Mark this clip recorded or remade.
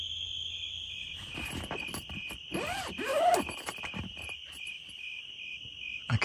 recorded